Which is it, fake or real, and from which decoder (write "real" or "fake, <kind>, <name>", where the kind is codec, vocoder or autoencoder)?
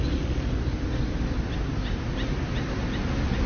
real